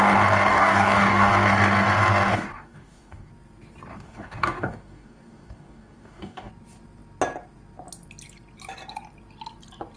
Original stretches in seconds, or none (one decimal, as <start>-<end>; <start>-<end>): 0.0-0.5; 1.3-2.3; 3.3-3.9; 6.5-10.0